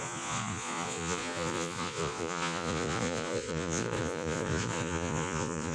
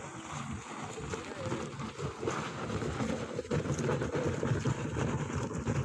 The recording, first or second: second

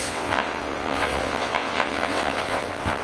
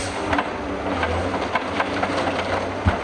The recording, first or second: second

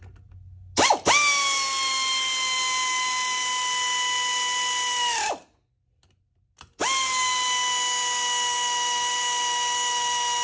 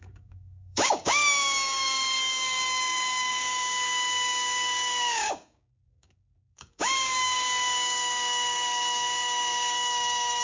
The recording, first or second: first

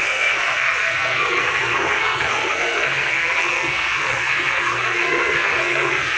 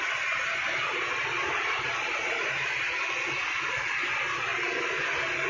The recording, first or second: second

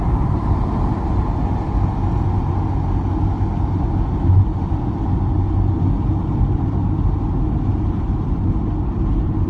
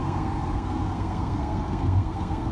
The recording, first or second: first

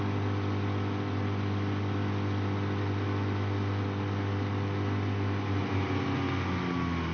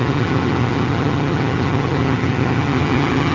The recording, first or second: first